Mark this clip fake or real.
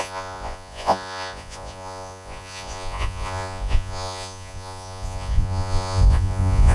fake